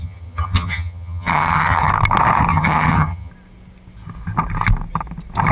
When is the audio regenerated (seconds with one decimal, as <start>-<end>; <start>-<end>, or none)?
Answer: 0.0-1.9; 2.5-3.3